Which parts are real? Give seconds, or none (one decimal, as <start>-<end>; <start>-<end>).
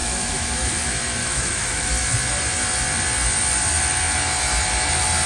0.7-1.2; 1.9-5.3